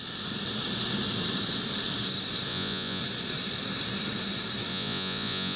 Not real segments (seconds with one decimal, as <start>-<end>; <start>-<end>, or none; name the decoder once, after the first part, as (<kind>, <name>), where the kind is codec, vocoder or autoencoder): 2.5-3.0 (vocoder, Vocos); 4.7-5.6